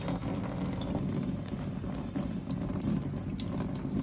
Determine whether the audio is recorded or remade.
recorded